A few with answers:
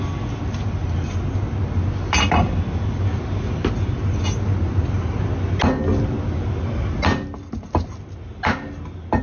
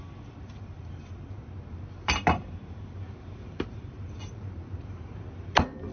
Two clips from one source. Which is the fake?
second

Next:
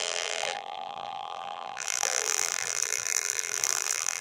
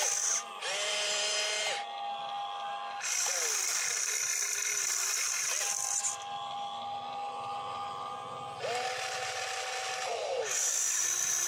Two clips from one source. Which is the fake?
first